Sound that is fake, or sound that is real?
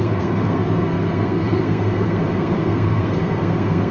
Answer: fake